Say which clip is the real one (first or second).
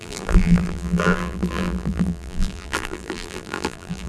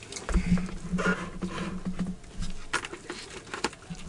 second